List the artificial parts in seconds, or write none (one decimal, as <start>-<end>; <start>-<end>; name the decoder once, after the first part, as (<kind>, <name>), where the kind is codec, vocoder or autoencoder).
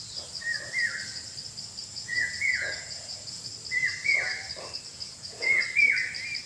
1.8-3.5 (vocoder, Vocos); 4.9-5.6